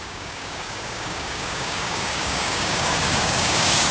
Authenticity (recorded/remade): remade